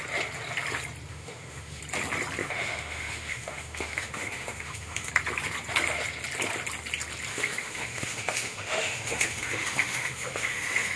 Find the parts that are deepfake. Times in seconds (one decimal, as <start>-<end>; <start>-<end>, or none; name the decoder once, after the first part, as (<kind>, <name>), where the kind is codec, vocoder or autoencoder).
1.1-1.8 (autoencoder, DAC-VAE); 2.4-5.1; 7.3-11.0

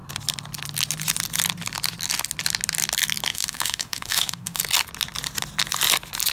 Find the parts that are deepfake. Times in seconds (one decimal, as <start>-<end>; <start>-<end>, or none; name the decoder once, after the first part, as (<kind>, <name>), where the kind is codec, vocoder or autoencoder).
3.3-4.6 (autoencoder, DAC-VAE)

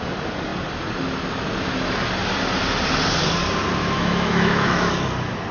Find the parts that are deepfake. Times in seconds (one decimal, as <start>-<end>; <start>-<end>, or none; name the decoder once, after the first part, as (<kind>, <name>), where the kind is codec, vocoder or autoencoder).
3.8-4.9 (autoencoder, DAC-VAE)

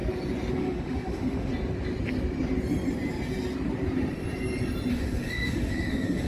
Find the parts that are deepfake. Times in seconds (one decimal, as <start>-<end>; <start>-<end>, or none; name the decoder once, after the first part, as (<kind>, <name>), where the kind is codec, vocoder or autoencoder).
0.5-1.5 (autoencoder, DAC-VAE); 4.9-6.3

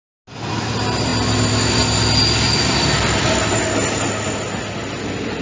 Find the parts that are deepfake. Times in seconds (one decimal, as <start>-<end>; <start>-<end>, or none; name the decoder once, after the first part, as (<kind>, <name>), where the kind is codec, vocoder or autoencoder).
none

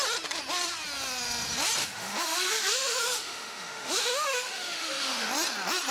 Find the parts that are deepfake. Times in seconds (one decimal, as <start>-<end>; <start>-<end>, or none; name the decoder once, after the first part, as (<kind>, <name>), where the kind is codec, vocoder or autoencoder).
1.8-5.3 (autoencoder, DAC-VAE)

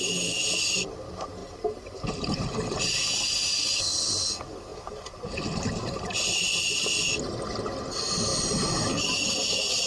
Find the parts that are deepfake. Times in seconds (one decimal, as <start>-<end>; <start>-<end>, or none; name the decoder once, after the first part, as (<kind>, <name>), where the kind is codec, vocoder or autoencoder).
none